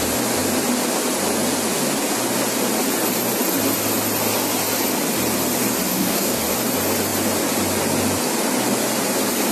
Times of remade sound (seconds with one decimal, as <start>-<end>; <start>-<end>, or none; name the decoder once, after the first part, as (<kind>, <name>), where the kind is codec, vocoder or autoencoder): 5.9-6.4 (codec, DAC)